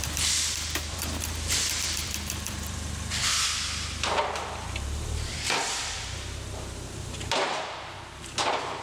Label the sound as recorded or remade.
remade